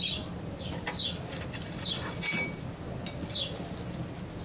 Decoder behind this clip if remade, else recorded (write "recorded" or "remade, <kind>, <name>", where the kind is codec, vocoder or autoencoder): recorded